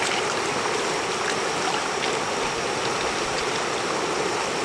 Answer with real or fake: real